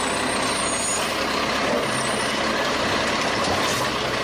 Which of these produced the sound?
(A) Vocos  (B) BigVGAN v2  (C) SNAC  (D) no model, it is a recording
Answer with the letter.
D